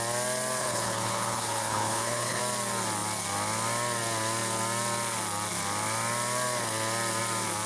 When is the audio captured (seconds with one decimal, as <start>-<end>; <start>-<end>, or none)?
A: 0.0-0.6; 2.4-7.7

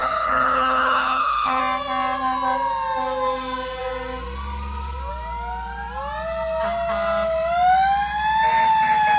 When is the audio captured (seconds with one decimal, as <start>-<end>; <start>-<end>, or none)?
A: 1.6-9.2

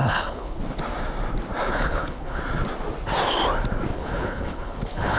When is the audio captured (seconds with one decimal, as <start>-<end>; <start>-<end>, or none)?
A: 0.6-1.7; 2.4-3.9

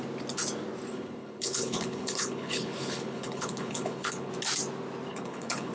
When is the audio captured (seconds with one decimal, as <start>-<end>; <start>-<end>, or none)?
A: 0.0-0.9; 4.3-5.1